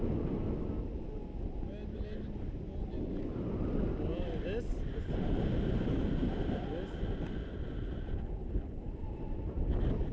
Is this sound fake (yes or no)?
no